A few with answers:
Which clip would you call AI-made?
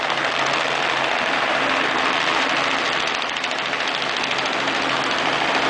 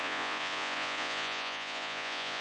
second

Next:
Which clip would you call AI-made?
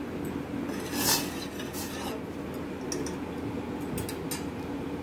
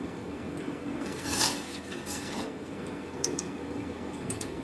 second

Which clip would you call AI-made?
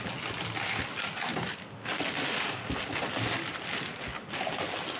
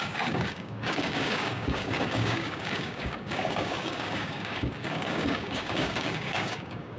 second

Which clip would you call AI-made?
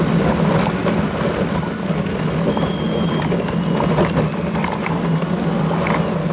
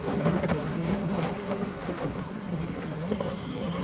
second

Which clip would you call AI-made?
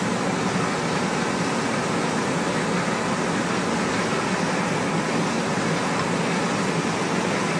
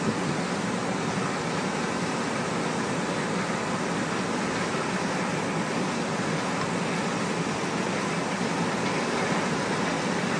second